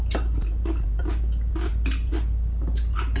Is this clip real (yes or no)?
yes